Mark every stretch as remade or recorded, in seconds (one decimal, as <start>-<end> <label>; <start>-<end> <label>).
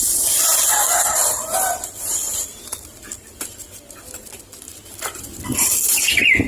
0.0-6.5 remade